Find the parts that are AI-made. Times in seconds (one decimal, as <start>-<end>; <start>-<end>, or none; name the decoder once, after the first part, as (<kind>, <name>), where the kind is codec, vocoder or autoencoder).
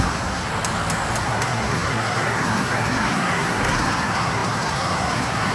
0.0-0.5 (codec, SNAC); 1.2-5.5